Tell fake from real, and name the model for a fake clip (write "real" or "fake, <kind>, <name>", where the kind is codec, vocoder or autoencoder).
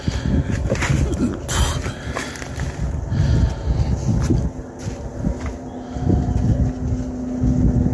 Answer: real